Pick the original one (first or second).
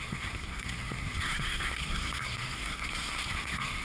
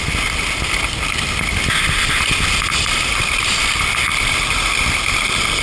second